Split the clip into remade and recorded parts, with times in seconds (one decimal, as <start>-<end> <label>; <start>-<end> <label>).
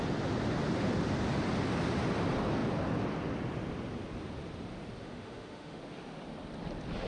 0.0-5.0 recorded; 5.0-5.8 remade; 5.8-7.1 recorded